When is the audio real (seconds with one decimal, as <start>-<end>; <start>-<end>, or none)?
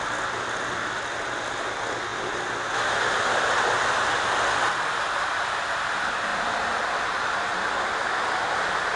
0.0-9.0